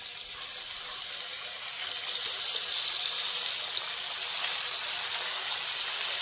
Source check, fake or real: real